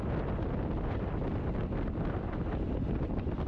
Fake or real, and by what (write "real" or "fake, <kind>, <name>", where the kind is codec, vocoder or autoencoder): real